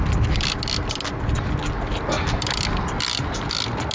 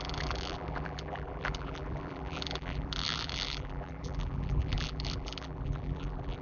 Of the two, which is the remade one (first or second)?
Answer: second